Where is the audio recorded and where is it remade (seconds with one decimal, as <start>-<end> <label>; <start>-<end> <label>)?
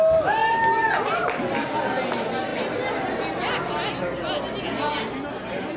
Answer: 0.0-5.8 recorded